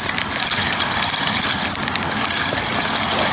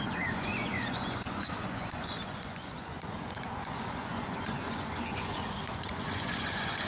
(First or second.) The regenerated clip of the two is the second